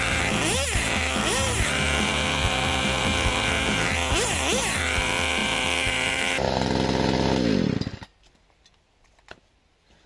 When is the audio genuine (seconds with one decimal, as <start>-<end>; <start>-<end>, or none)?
0.0-10.1